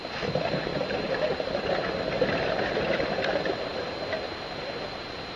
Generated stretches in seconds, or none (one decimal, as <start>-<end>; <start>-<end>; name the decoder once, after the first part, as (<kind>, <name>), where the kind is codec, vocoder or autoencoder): 0.7-3.1 (vocoder, BigVGAN v2)